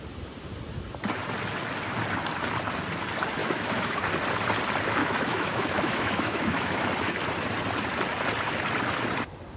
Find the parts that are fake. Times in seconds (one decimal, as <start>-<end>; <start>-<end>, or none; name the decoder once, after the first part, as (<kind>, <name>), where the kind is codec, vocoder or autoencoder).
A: 3.4-4.1 (autoencoder, DAC-VAE); 5.0-6.8